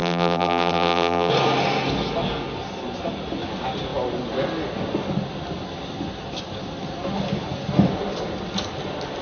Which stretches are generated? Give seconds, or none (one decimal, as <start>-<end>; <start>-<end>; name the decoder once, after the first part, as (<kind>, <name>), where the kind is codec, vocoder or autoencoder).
0.0-1.3 (vocoder, BigVGAN v2)